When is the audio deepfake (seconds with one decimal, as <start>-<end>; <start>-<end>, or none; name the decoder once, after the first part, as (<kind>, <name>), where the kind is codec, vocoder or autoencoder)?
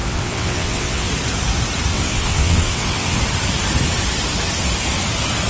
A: 0.0-1.1 (vocoder, WaveNeXt); 1.9-3.2